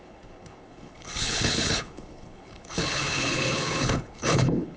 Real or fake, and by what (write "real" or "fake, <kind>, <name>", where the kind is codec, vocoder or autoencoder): fake, codec, HILCodec